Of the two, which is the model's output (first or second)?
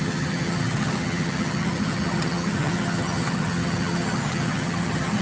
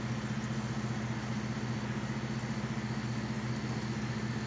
first